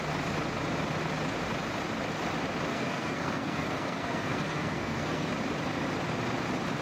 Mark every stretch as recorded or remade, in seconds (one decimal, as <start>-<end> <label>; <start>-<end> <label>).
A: 0.0-2.7 recorded; 2.7-5.3 remade; 5.3-6.8 recorded

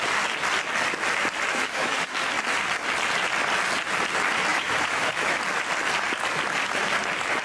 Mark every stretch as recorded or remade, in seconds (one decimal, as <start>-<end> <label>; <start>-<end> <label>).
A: 0.0-1.5 recorded; 1.5-2.1 remade; 2.1-4.5 recorded; 4.5-5.4 remade; 5.4-7.4 recorded

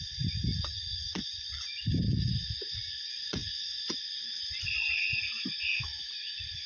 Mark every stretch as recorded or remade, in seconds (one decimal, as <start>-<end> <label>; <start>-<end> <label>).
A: 0.0-6.7 remade

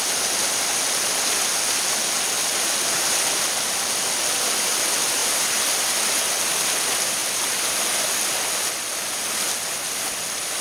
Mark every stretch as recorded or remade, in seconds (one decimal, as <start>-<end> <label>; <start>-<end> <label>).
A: 0.0-7.2 recorded; 7.2-8.0 remade; 8.0-10.6 recorded

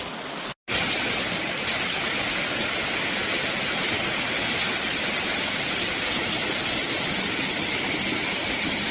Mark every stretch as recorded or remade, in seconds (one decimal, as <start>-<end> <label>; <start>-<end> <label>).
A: 0.0-8.9 recorded